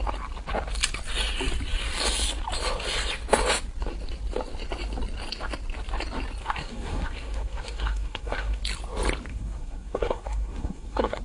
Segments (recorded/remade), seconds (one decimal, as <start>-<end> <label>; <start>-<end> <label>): 0.0-6.4 recorded; 6.4-8.6 remade; 8.6-9.3 recorded; 9.3-11.2 remade

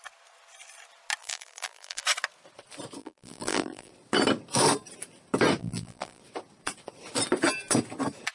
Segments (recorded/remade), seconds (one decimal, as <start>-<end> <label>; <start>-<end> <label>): 0.0-1.2 recorded; 1.2-2.0 remade; 2.0-3.0 recorded; 3.0-3.9 remade; 3.9-5.6 recorded; 5.6-6.2 remade; 6.2-8.3 recorded

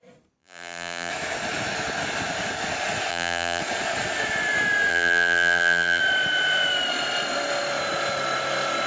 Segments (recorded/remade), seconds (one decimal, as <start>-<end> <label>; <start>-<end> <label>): 0.0-0.4 recorded; 0.4-1.1 remade; 1.1-3.1 recorded; 3.1-3.6 remade; 3.6-4.9 recorded; 4.9-6.0 remade; 6.0-8.9 recorded